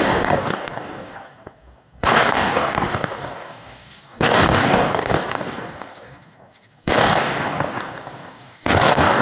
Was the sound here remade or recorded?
remade